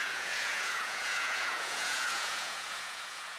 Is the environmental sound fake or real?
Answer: fake